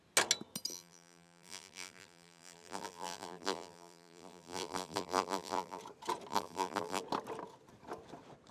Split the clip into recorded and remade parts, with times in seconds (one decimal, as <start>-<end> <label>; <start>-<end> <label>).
0.0-0.7 recorded; 0.7-5.8 remade; 5.8-6.3 recorded; 6.3-7.0 remade; 7.0-8.5 recorded